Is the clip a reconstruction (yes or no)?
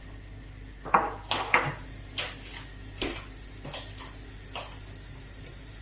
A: no